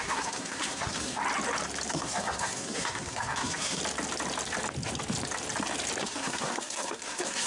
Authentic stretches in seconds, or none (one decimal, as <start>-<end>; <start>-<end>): 1.2-1.9; 3.8-6.0